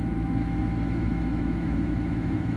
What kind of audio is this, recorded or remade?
remade